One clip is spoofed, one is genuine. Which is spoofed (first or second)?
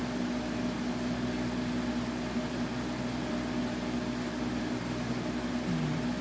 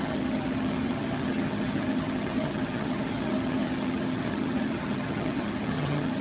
second